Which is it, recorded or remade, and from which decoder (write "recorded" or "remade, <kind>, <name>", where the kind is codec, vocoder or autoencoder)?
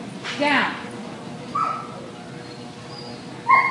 recorded